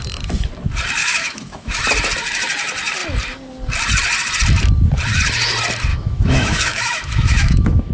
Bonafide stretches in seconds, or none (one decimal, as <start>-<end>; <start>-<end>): 0.0-1.0; 1.8-5.9